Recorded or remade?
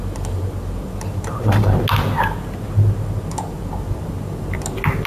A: recorded